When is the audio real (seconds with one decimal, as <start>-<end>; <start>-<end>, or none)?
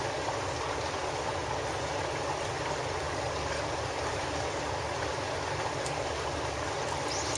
0.0-7.4